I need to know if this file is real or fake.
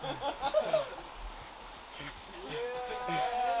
real